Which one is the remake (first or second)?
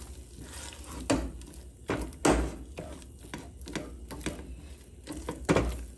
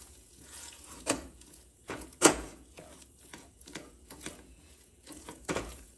second